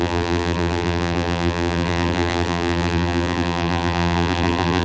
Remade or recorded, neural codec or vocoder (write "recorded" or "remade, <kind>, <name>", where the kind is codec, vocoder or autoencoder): remade, vocoder, BigVGAN v2